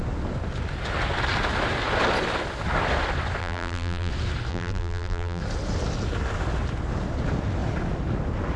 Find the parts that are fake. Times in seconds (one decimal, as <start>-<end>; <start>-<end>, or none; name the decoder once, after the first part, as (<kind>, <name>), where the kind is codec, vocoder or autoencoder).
3.4-4.1 (vocoder, BigVGAN v2); 4.5-5.4